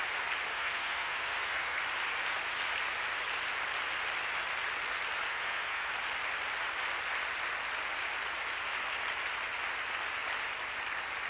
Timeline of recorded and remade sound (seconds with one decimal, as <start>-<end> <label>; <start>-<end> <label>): 0.0-0.5 recorded; 0.5-1.8 remade; 1.8-5.3 recorded; 5.3-5.9 remade; 5.9-11.3 recorded